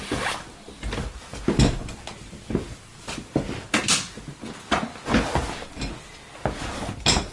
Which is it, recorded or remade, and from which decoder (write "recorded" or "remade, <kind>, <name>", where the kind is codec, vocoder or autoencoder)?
recorded